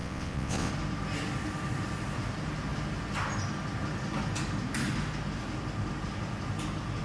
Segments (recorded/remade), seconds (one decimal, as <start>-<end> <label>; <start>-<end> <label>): 0.0-0.7 remade; 0.7-7.0 recorded